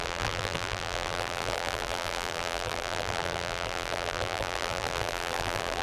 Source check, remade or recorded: remade